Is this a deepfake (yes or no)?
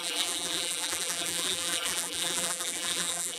yes